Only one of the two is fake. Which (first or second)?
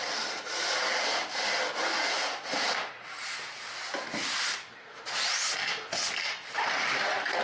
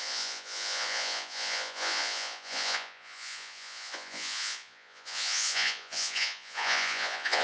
second